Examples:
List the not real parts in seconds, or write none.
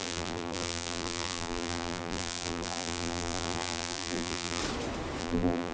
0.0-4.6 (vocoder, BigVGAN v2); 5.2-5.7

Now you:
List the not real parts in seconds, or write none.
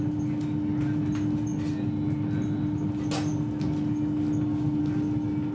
none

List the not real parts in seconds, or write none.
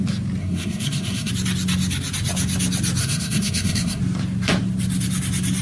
0.4-1.3 (codec, SNAC); 3.0-4.0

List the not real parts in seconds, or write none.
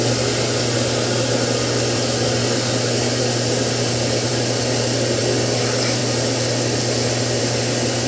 none